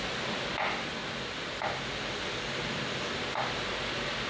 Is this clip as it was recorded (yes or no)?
yes